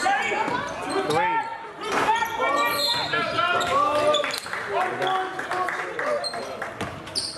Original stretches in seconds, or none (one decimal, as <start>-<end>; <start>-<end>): 0.0-7.4